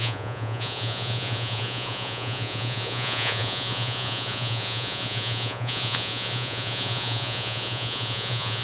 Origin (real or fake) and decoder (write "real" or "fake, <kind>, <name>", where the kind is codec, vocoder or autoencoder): fake, vocoder, Vocos